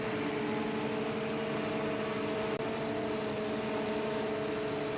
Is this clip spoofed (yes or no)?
no